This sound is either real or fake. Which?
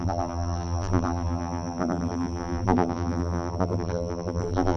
fake